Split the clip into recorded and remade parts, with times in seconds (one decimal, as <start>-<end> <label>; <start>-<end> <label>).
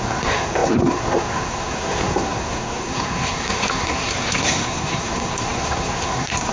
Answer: 0.0-6.5 remade